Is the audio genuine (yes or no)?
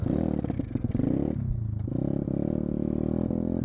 yes